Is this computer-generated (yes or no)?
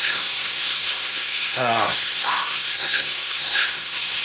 yes